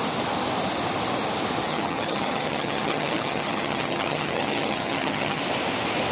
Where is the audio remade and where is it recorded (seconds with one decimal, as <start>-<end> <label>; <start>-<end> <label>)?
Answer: 0.0-1.7 recorded; 1.7-5.4 remade; 5.4-6.1 recorded